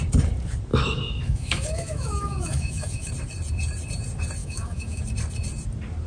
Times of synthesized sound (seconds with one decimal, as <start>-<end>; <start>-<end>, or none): 0.7-3.1; 4.4-5.0